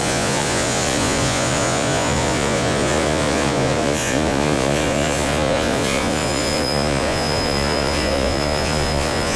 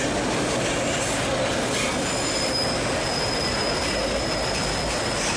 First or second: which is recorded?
second